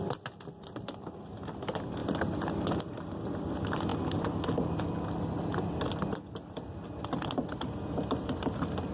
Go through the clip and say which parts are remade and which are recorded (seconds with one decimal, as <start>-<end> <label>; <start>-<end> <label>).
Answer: 0.0-8.9 recorded